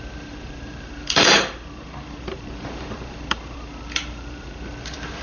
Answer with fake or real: fake